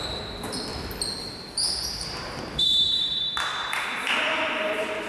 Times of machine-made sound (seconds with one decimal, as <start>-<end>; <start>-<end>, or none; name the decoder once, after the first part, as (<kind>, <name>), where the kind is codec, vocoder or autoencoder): 0.0-0.7 (vocoder, BigVGAN v2); 1.2-5.1